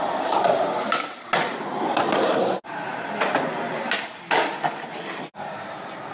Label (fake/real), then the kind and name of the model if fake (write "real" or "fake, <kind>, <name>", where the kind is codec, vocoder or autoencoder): real